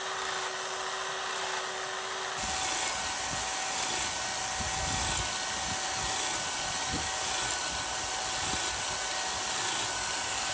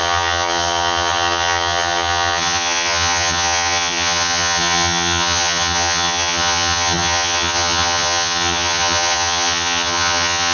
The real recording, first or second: first